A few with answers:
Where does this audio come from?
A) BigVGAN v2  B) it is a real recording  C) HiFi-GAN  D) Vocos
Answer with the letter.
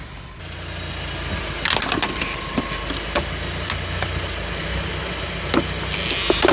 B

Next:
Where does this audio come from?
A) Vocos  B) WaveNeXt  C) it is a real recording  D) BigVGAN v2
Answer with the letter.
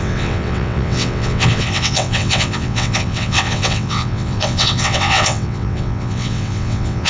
B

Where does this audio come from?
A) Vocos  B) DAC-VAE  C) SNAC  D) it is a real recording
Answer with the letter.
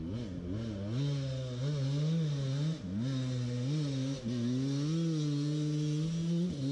D